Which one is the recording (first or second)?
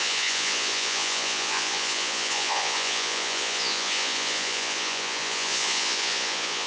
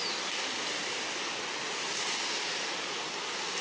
second